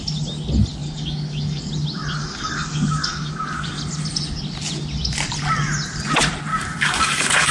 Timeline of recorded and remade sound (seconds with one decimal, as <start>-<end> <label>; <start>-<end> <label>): 0.0-0.8 recorded; 0.8-1.6 remade; 1.6-2.2 recorded; 2.2-3.8 remade; 3.8-6.5 recorded; 6.5-7.5 remade